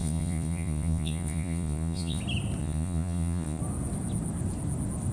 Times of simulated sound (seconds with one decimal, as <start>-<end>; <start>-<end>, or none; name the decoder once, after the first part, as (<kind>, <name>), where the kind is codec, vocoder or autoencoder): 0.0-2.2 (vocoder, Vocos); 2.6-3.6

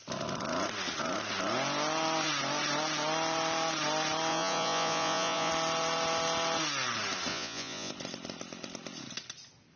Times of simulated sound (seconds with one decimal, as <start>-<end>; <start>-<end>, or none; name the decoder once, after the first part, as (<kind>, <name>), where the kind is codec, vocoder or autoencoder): 4.3-5.5 (vocoder, Vocos); 7.3-7.9

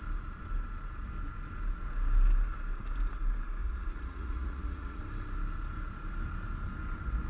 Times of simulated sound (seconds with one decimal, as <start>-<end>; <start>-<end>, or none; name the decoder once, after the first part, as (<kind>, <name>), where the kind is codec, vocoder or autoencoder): 3.6-5.0 (vocoder, Vocos)